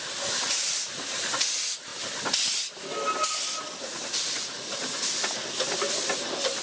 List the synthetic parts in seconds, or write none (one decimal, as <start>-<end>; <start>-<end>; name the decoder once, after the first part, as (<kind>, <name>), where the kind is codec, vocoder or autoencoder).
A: none